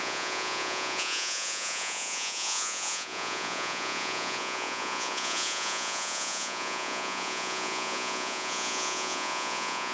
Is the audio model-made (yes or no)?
yes